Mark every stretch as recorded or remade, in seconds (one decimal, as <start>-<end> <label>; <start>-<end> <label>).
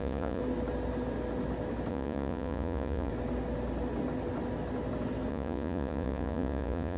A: 0.0-0.4 remade; 0.4-1.9 recorded; 1.9-3.1 remade; 3.1-5.3 recorded; 5.3-7.0 remade